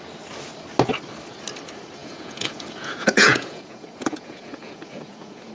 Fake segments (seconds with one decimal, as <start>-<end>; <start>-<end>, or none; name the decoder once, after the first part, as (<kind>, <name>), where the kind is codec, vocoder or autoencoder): 2.0-5.5 (vocoder, Vocos)